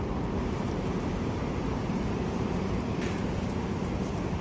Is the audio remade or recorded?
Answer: remade